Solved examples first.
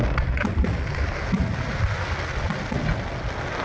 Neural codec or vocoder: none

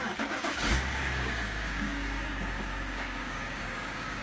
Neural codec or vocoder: codec, DAC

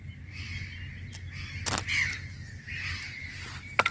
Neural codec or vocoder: none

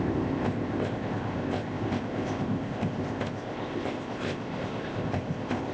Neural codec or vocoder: codec, ZipCodec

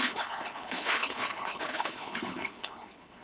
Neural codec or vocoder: codec, HILCodec